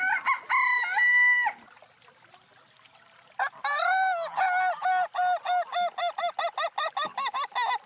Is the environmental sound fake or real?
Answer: real